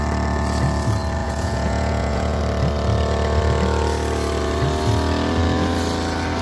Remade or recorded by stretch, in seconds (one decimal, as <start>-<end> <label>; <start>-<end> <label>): 0.0-1.2 recorded; 1.2-2.4 remade; 2.4-6.4 recorded